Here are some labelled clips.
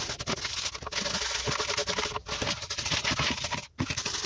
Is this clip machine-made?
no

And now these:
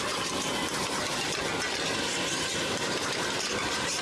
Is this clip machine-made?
no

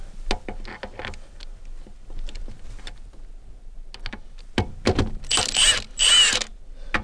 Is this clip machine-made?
no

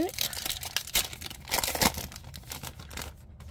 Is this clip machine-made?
no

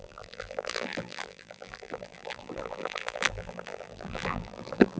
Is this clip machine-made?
yes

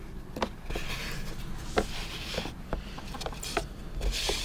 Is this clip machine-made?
no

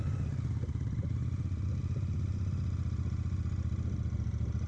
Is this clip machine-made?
no